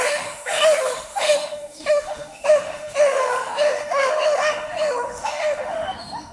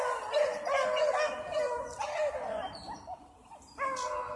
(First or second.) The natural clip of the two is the second